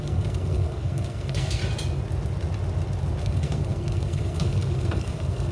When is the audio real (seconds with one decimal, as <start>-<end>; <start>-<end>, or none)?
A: 1.6-3.2